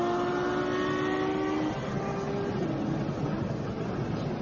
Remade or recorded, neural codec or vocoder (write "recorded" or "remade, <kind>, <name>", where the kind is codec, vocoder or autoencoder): recorded